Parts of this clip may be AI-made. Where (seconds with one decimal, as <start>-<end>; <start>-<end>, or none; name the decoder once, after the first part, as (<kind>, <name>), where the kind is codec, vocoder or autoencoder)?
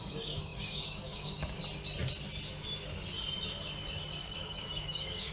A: 0.0-1.6 (codec, DAC); 4.2-5.3